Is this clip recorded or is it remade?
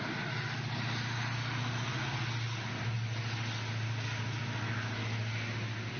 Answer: recorded